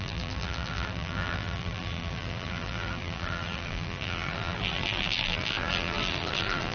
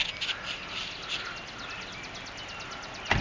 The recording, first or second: second